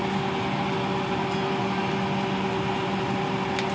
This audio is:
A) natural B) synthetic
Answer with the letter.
A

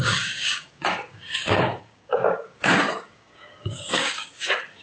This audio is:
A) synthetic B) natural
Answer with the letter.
A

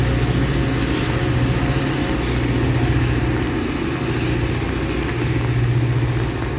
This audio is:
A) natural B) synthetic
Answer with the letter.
A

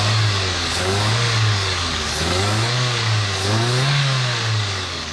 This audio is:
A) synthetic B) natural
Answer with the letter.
A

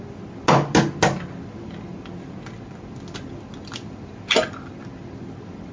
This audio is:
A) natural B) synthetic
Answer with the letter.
A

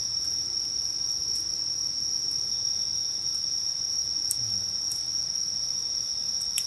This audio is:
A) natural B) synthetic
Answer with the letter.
A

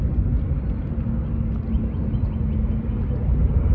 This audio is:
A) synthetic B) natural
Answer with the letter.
B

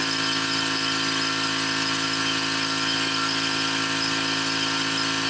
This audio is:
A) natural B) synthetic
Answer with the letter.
A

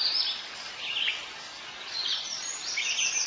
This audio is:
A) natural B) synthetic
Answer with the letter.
A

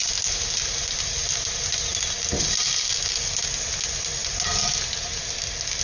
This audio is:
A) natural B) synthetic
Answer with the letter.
A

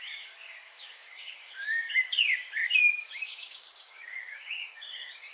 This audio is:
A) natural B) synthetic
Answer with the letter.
B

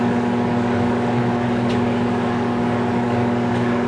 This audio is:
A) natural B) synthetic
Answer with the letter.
B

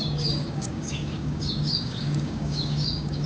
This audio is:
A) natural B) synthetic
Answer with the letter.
B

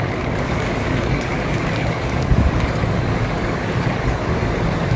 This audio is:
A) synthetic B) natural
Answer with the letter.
A